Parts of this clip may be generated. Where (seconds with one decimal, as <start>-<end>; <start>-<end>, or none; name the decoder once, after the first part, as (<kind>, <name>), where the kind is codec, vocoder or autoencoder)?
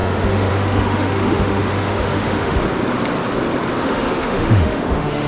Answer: 0.0-2.6 (autoencoder, DAC-VAE); 3.8-5.3